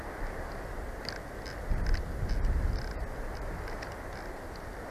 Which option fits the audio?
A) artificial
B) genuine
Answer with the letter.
B